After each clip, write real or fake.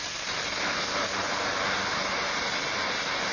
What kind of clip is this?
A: real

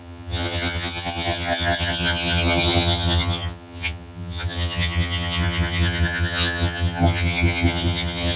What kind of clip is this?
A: fake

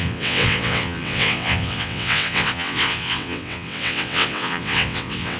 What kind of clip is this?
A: fake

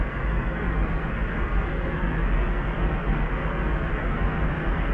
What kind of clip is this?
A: fake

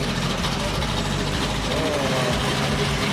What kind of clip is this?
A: real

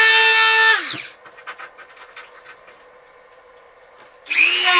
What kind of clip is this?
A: real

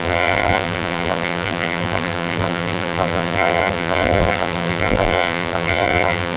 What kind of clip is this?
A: fake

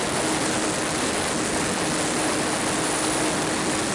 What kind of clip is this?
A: real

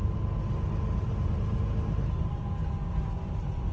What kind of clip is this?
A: real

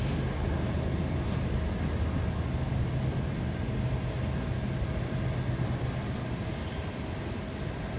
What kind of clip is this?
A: real